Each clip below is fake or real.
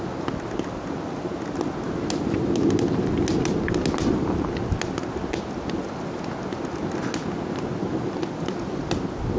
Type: real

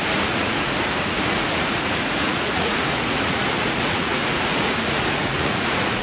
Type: fake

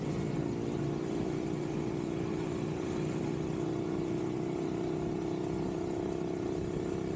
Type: real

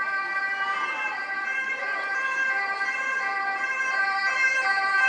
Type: real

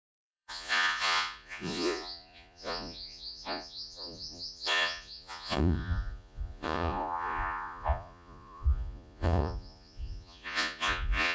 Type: fake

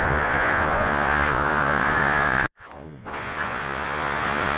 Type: fake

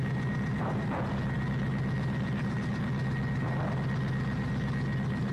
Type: real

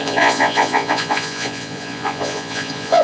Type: fake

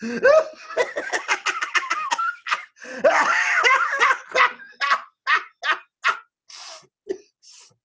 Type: real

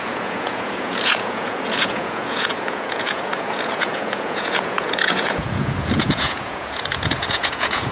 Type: fake